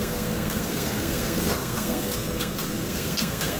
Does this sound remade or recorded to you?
remade